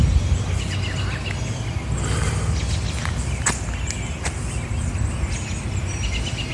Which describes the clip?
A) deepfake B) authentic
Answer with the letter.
B